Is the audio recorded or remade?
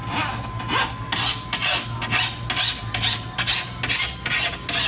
recorded